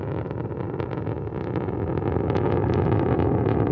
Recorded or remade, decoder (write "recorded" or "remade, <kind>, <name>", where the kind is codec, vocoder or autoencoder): recorded